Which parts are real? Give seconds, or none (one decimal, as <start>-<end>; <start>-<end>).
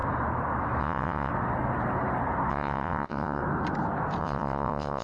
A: 0.0-0.8; 1.3-2.5; 3.4-4.2